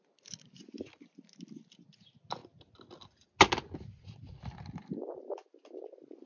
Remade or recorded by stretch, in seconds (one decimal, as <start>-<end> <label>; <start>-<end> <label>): 0.0-6.3 recorded